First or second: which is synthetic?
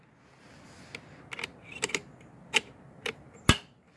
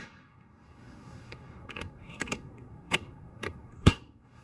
second